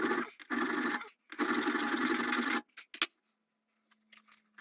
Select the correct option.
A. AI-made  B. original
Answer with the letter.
B